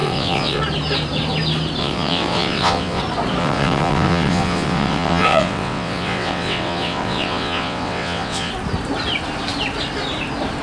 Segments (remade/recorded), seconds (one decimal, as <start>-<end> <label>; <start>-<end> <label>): 0.0-0.6 remade; 0.6-1.8 recorded; 1.8-3.0 remade; 3.0-3.4 recorded; 3.4-8.5 remade; 8.5-10.6 recorded